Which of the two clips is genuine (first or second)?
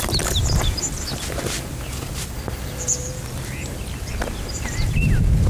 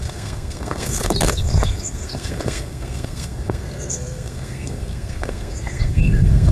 first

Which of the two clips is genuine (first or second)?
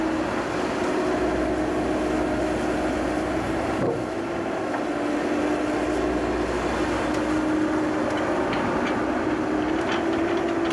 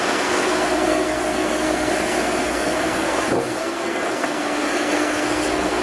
first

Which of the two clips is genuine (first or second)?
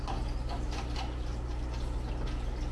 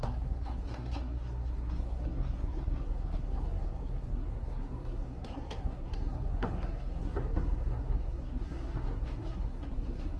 first